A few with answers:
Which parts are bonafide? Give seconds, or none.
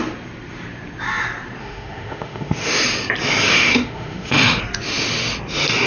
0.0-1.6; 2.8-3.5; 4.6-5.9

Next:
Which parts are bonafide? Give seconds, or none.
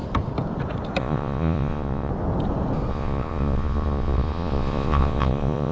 0.0-1.0; 2.1-2.9